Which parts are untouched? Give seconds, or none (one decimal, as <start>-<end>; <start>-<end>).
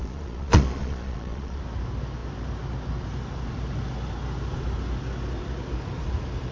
1.6-6.5